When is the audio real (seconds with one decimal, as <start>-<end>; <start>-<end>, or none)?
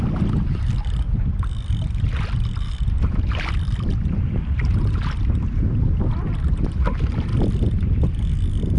0.0-1.7; 4.6-7.3; 8.1-8.8